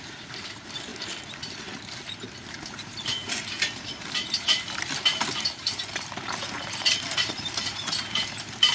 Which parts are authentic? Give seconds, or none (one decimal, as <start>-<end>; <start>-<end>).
0.9-2.5